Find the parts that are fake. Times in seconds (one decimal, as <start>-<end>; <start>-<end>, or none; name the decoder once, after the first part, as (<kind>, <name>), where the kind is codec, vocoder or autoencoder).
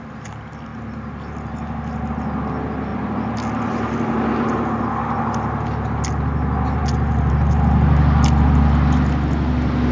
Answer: none